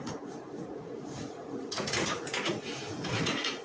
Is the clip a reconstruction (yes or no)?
yes